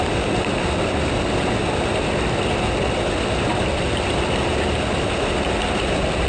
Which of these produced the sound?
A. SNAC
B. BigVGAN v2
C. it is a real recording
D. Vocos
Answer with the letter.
C